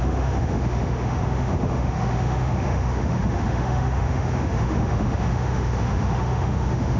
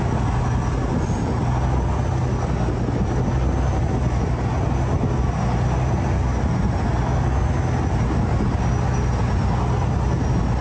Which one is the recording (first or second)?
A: second